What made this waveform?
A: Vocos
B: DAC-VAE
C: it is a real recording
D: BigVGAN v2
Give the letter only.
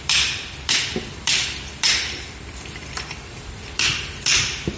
D